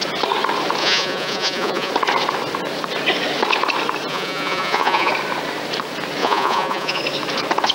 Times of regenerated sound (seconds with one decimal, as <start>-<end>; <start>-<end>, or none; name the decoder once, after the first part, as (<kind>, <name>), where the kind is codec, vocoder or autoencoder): 0.8-1.9 (vocoder, Vocos); 4.1-5.1; 6.2-7.0